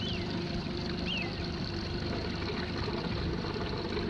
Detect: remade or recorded remade